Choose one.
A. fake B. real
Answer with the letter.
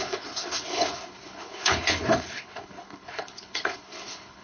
A